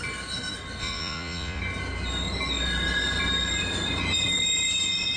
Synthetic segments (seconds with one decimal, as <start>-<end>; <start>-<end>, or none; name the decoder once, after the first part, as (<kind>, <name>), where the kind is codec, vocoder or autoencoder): 0.8-1.6 (vocoder, Vocos)